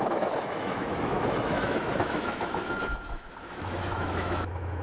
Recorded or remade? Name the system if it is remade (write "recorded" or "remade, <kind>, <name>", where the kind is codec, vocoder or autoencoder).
remade, autoencoder, DAC-VAE